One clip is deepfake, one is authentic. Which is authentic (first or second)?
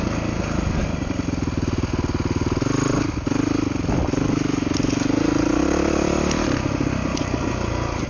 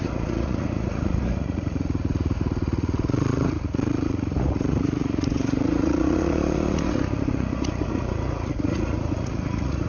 first